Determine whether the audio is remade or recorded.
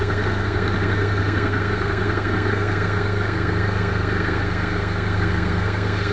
remade